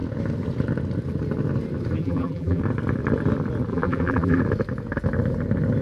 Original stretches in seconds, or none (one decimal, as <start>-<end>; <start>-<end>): 0.0-2.0; 2.6-3.7; 4.4-5.8